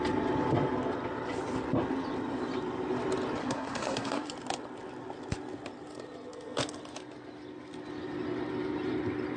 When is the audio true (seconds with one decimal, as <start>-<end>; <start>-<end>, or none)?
0.0-3.4; 4.3-9.4